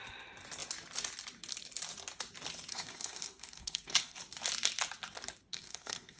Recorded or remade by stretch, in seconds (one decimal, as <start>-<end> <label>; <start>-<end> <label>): 0.0-2.7 recorded; 2.7-4.2 remade; 4.2-5.5 recorded; 5.5-6.2 remade